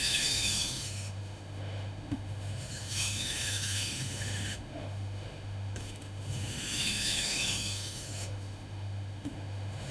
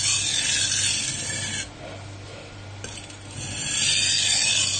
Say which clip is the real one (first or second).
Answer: second